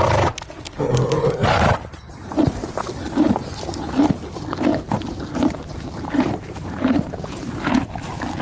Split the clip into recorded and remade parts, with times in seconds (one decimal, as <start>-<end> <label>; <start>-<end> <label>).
0.0-1.4 recorded; 1.4-2.4 remade; 2.4-4.7 recorded; 4.7-7.9 remade; 7.9-8.4 recorded